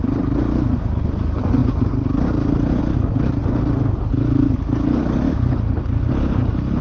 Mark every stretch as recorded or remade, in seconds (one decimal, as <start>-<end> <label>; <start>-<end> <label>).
0.0-6.8 recorded

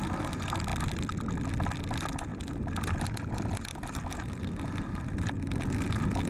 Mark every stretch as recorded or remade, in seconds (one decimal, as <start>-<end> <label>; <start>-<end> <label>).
0.0-6.3 recorded